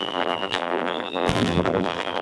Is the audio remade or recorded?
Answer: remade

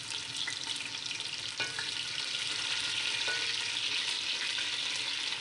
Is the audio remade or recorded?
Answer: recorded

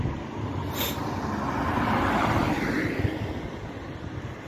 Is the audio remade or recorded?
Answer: recorded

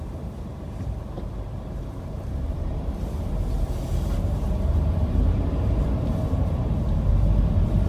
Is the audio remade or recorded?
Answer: remade